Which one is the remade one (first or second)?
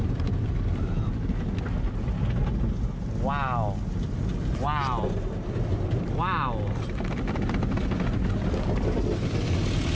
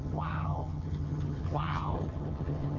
second